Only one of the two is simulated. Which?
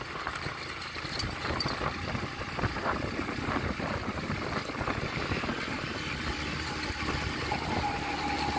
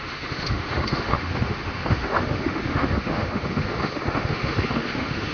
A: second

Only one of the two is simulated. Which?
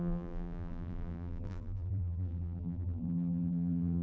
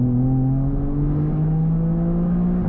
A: first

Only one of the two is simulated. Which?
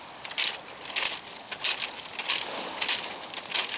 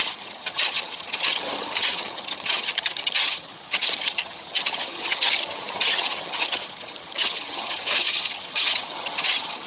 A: second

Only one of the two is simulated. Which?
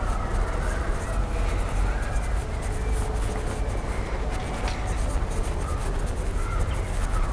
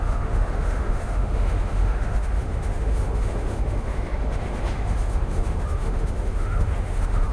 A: second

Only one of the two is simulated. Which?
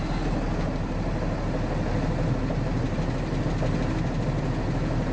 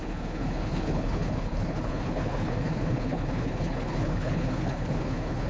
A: second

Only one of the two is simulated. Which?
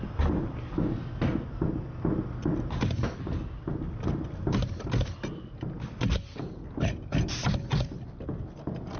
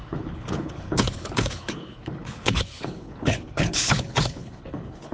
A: second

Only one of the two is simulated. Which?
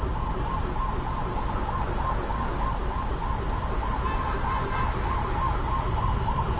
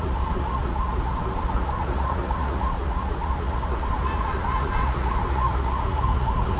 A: second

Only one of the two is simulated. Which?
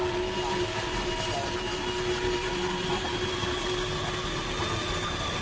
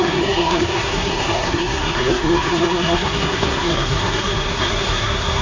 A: second